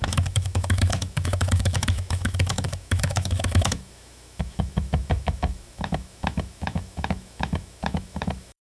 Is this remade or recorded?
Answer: remade